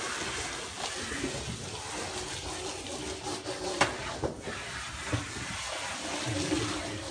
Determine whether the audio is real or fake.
real